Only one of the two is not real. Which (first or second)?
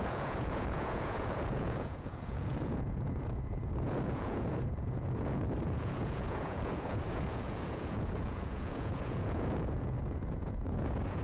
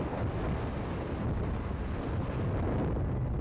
first